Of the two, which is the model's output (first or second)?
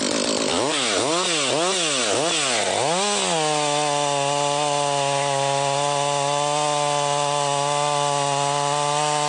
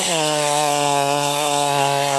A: second